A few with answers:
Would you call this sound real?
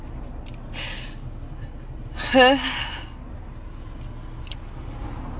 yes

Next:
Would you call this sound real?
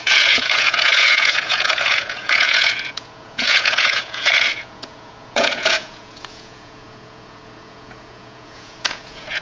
no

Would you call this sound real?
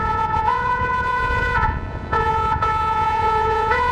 no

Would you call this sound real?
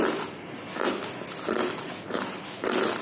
yes